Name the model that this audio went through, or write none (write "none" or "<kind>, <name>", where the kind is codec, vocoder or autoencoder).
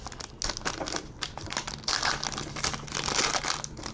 none